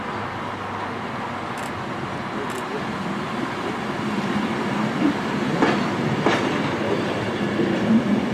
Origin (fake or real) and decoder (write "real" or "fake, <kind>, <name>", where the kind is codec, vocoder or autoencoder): real